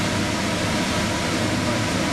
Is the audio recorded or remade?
recorded